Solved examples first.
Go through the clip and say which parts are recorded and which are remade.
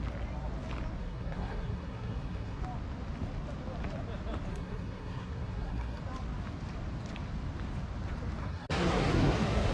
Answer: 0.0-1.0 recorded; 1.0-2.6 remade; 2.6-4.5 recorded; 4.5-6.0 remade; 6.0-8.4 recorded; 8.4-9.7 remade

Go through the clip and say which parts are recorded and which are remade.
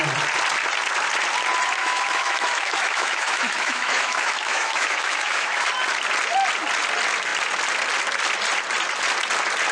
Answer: 0.0-1.8 recorded; 1.8-5.7 remade; 5.7-9.7 recorded